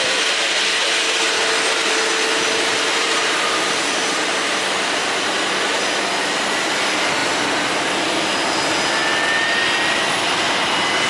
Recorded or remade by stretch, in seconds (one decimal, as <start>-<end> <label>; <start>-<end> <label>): 0.0-2.4 recorded; 2.4-4.3 remade; 4.3-11.1 recorded

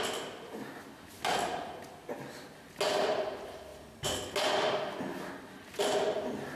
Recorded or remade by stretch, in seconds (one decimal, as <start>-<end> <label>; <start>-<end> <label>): 0.0-6.6 recorded

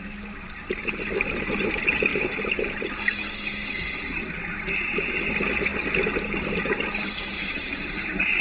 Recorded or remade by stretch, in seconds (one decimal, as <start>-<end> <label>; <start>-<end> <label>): 0.0-2.1 recorded; 2.1-2.9 remade; 2.9-7.6 recorded; 7.6-8.4 remade

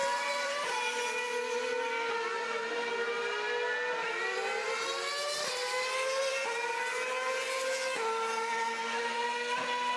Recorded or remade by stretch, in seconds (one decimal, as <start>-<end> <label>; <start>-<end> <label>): 0.0-0.7 remade; 0.7-10.0 recorded

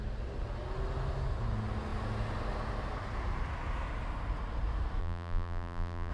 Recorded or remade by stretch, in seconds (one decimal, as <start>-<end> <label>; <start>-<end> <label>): 0.0-5.0 recorded; 5.0-6.1 remade

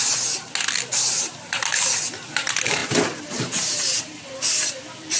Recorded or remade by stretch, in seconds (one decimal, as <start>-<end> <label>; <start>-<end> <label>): 0.0-5.2 recorded

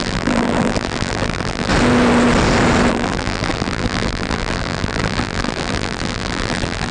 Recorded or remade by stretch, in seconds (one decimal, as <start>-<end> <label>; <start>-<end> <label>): 0.0-1.7 remade; 1.7-2.9 recorded; 2.9-6.9 remade

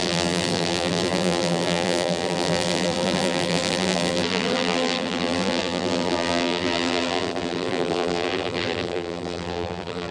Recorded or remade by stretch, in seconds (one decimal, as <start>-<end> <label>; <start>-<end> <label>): 0.0-10.1 remade